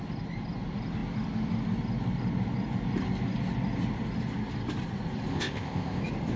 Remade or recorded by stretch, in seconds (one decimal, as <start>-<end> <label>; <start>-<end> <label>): 0.0-5.3 recorded; 5.3-6.0 remade; 6.0-6.4 recorded

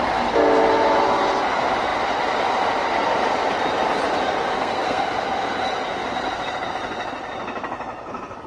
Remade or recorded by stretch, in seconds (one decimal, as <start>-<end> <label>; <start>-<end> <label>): 0.0-4.5 recorded; 4.5-5.0 remade; 5.0-8.5 recorded

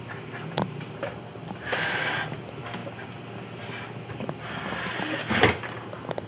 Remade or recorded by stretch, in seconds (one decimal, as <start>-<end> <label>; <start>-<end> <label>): 0.0-6.3 recorded

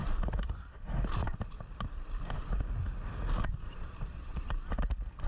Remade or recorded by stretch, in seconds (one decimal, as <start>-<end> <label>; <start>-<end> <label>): 0.0-3.7 recorded; 3.7-4.5 remade; 4.5-5.3 recorded

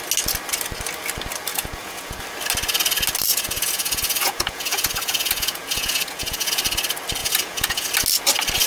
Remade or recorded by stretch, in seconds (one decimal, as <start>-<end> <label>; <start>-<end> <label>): 0.0-1.5 recorded; 1.5-2.2 remade; 2.2-3.3 recorded; 3.3-6.5 remade; 6.5-7.2 recorded; 7.2-7.9 remade; 7.9-8.7 recorded

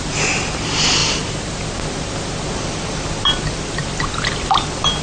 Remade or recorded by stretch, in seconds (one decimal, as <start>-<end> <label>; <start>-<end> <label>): 0.0-5.0 recorded

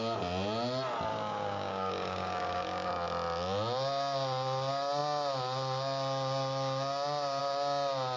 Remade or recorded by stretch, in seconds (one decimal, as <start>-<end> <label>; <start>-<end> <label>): 0.0-1.1 recorded; 1.1-2.9 remade; 2.9-8.2 recorded

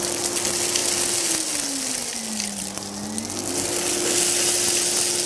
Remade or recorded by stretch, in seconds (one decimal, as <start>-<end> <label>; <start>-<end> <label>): 0.0-5.3 recorded